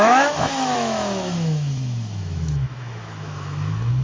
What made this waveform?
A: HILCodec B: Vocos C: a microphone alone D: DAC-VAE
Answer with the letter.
D